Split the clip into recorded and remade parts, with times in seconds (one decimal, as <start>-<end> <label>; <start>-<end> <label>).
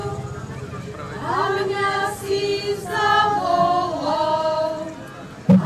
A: 0.0-5.7 recorded